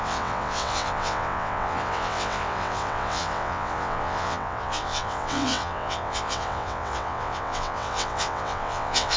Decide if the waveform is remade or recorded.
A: remade